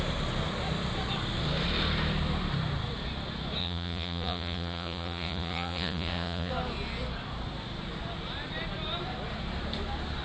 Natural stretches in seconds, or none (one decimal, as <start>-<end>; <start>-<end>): 0.0-3.6; 6.5-10.2